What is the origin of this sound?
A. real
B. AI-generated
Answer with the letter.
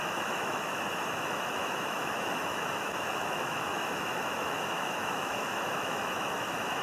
B